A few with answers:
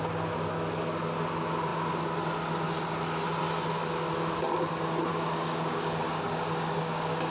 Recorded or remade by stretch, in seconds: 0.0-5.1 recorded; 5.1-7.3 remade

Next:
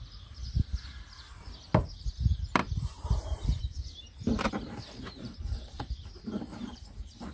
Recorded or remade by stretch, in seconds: 0.0-0.4 remade; 0.4-2.0 recorded; 2.0-7.3 remade